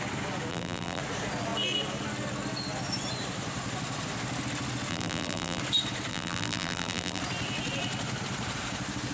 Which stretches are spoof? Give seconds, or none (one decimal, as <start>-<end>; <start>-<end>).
0.5-1.0; 4.9-5.6; 6.1-7.2